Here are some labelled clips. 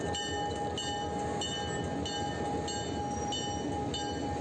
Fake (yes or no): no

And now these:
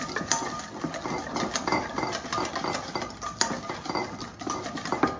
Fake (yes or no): no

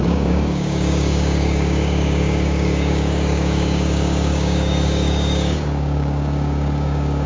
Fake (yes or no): yes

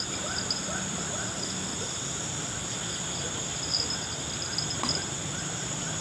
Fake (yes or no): no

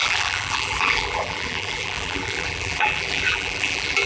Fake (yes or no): yes